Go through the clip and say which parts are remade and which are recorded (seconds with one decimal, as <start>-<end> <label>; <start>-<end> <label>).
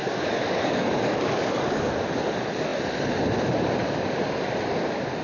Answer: 0.0-1.9 remade; 1.9-5.2 recorded